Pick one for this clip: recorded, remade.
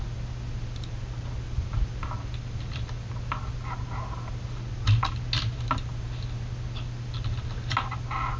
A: recorded